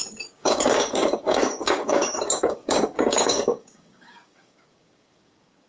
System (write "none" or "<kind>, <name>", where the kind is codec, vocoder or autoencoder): codec, DAC